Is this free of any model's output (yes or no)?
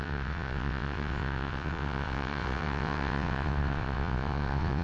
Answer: no